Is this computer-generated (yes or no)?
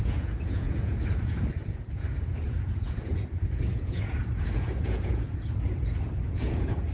yes